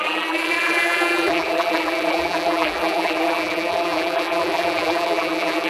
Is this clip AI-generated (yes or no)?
yes